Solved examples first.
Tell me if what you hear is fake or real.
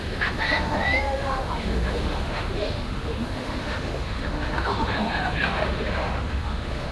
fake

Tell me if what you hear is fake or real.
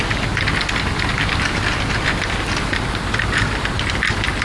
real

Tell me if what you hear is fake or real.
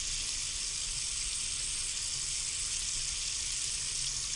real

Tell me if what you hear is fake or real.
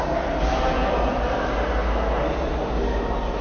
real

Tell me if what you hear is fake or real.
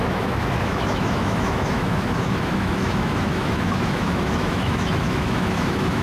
fake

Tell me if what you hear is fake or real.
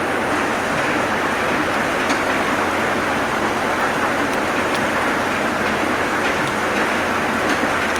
real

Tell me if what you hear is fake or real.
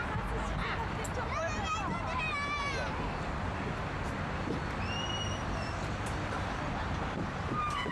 real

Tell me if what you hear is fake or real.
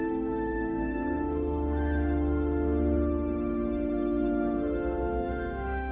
fake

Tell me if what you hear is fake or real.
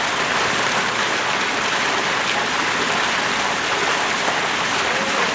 real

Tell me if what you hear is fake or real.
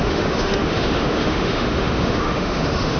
fake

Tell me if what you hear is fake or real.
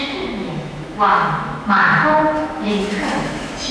fake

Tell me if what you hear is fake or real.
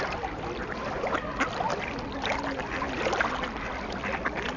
real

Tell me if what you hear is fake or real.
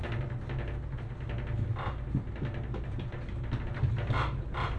real